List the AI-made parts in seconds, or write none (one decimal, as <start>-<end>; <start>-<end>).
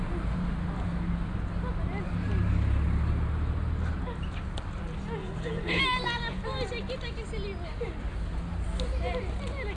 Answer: 5.2-5.8